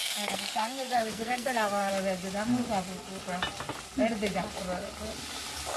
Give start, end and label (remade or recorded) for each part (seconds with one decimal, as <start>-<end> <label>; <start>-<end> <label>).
0.0-1.9 remade; 1.9-5.8 recorded